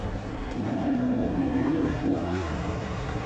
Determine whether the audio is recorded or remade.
remade